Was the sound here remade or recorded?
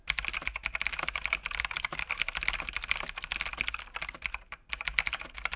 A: recorded